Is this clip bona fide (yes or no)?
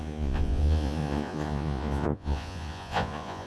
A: no